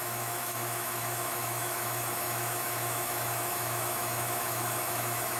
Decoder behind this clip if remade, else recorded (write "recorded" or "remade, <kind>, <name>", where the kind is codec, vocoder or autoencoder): remade, autoencoder, DAC-VAE